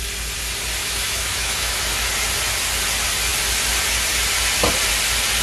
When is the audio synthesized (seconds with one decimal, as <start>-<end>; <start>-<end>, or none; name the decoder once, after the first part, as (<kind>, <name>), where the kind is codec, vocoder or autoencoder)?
0.8-1.8 (autoencoder, DAC-VAE)